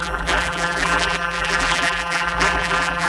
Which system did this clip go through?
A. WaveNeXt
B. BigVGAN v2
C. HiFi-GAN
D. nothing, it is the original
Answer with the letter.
B